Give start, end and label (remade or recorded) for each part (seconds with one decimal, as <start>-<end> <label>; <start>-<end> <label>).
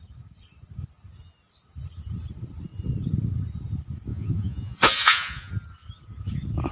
0.0-4.1 recorded; 4.1-5.5 remade; 5.5-6.7 recorded